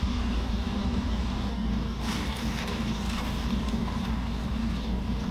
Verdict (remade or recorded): remade